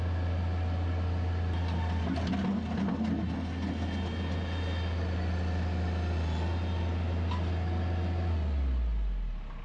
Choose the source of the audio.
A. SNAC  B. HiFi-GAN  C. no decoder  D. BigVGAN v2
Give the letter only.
C